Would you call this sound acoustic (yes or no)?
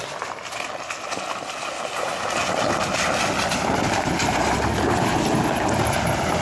yes